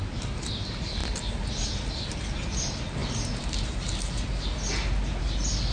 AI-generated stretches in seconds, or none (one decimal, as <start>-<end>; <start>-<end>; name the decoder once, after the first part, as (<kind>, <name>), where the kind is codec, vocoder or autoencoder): none